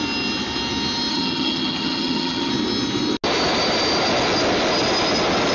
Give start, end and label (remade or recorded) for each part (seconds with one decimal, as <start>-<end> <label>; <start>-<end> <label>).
0.0-1.1 recorded; 1.1-2.5 remade; 2.5-5.5 recorded